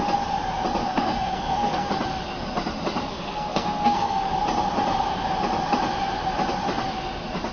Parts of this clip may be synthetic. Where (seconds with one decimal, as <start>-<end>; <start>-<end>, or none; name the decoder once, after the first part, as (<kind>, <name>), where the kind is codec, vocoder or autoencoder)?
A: 0.8-1.9 (codec, SNAC); 3.1-4.3